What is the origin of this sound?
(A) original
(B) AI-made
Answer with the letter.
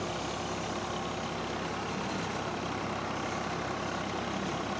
A